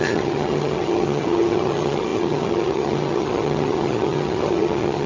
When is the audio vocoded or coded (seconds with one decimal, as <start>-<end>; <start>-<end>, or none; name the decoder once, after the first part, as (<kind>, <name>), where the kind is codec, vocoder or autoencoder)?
0.0-5.1 (vocoder, HiFi-GAN)